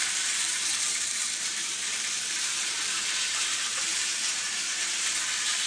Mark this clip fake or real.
fake